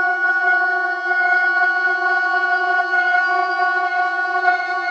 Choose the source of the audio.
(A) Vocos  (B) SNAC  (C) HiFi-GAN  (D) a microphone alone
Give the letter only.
C